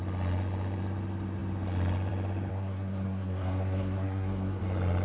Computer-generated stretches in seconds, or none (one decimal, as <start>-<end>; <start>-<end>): 2.5-4.6